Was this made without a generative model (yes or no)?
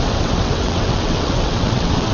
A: no